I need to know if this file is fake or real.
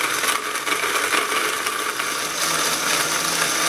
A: real